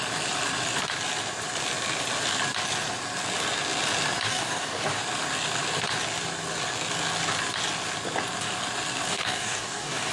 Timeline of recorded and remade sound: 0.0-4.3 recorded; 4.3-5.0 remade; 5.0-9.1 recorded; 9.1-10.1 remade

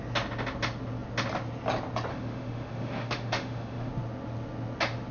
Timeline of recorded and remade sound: 0.0-2.1 recorded; 2.1-3.9 remade; 3.9-5.1 recorded

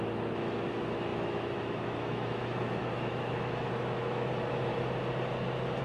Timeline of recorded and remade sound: 0.0-4.7 remade; 4.7-5.8 recorded

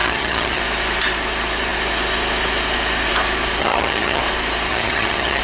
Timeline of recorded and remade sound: 0.0-0.6 remade; 0.6-3.6 recorded; 3.6-4.2 remade; 4.2-4.7 recorded; 4.7-5.4 remade